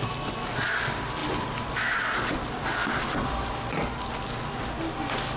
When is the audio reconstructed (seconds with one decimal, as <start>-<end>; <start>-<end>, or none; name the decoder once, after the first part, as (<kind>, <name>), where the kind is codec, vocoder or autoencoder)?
none